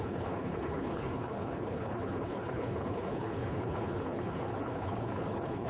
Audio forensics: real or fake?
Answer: fake